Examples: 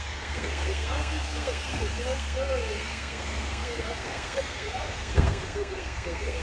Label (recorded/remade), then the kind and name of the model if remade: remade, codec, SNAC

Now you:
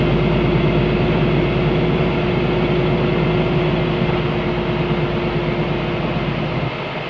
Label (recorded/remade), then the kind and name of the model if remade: recorded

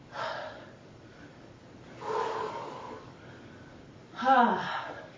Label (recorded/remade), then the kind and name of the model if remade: remade, codec, DAC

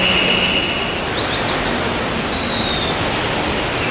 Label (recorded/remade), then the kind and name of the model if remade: recorded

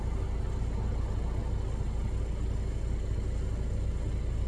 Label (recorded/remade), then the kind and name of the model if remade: recorded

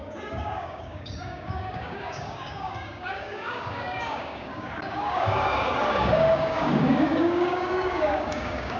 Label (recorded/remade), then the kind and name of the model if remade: remade, codec, DAC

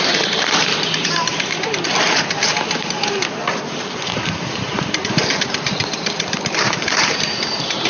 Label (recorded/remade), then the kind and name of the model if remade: remade, vocoder, BigVGAN v2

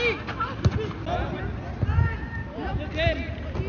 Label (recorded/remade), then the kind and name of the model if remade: recorded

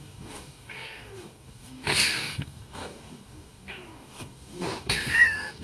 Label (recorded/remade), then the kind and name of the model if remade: remade, codec, DAC